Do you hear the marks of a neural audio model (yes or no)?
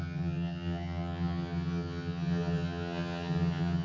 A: yes